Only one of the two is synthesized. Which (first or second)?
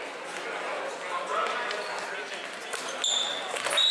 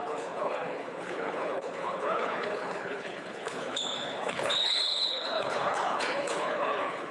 second